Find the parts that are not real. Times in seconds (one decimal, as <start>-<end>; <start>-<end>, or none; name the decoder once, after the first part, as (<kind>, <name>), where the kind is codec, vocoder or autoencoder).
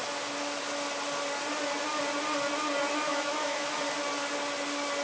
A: 3.1-3.8 (autoencoder, DAC-VAE)